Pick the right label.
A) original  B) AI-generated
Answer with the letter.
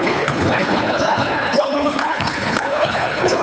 B